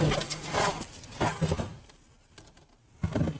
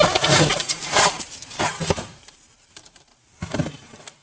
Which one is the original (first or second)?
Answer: first